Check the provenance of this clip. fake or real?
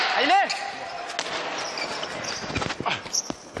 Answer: real